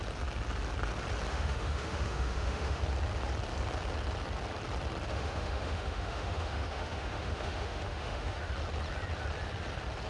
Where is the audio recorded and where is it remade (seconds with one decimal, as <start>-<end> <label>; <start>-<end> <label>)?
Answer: 0.0-1.3 recorded; 1.3-2.8 remade; 2.8-5.1 recorded; 5.1-8.5 remade; 8.5-10.1 recorded